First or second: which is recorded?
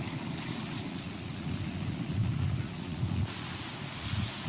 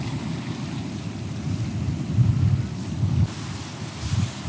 second